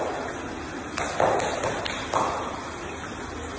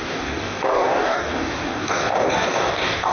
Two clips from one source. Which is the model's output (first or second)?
second